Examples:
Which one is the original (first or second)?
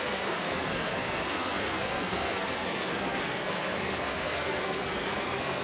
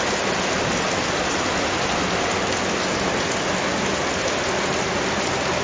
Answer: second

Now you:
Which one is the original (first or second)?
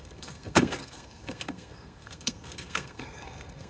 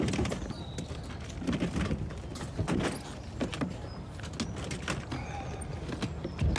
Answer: second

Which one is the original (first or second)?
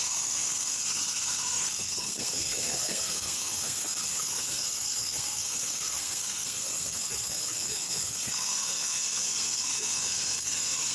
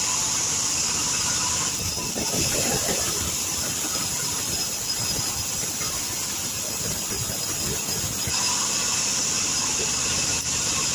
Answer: second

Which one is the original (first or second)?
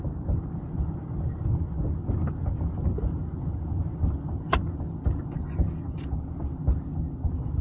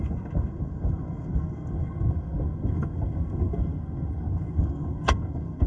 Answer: first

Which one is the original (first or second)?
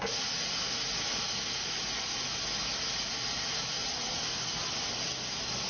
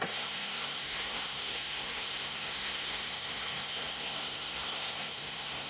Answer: first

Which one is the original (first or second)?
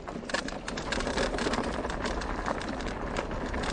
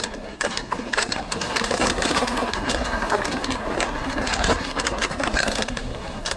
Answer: first